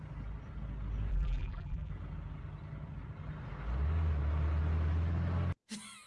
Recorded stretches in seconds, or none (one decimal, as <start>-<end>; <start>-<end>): 0.0-1.1; 1.9-6.1